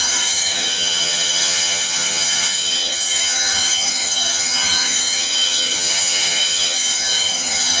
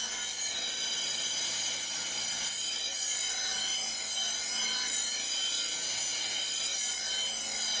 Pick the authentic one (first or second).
second